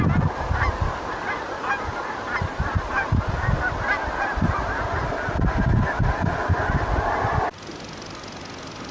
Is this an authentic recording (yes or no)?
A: yes